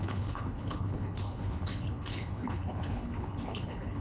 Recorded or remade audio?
remade